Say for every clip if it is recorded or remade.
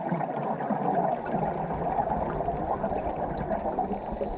recorded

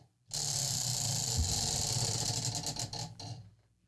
recorded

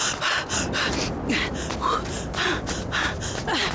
recorded